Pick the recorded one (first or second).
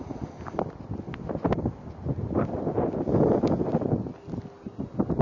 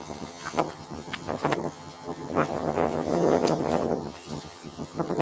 first